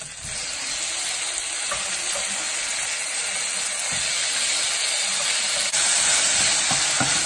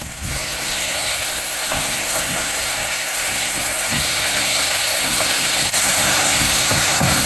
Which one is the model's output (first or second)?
second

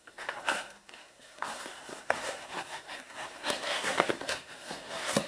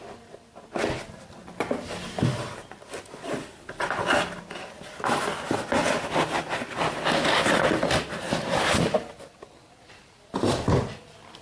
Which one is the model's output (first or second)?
first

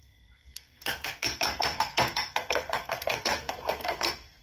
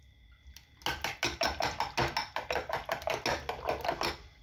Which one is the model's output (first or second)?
first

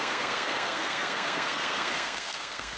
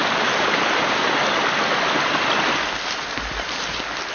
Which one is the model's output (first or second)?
first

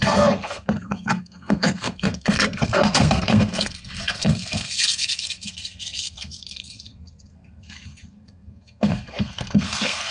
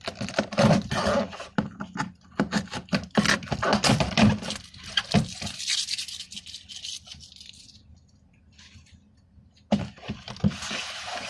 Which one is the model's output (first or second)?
first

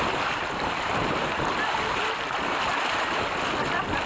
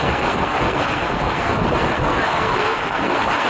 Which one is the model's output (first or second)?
second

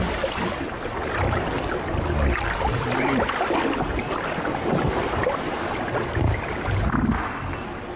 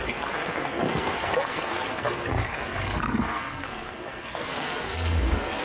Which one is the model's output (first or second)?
second